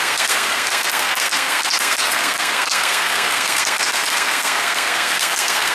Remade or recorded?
remade